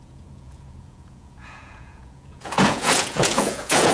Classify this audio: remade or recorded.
remade